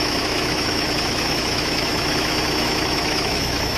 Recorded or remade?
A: remade